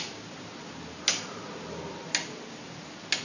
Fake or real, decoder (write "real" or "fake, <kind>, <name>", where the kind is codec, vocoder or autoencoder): real